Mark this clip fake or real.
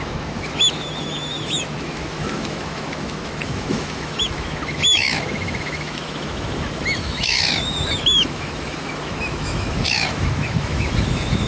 fake